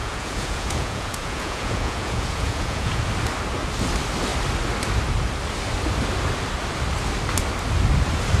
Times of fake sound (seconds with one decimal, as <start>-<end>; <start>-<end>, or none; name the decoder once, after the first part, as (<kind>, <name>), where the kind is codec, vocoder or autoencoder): 0.0-3.1 (vocoder, Vocos)